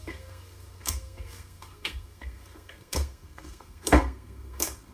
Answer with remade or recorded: remade